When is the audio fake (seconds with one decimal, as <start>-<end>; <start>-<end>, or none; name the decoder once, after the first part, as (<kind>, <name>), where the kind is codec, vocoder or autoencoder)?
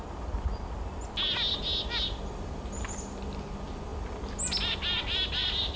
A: none